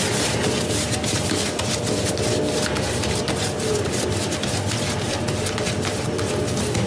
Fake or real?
real